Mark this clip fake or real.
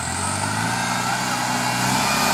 real